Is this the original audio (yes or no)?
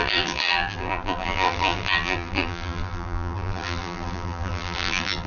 no